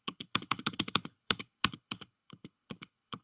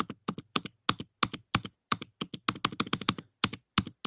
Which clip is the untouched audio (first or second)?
second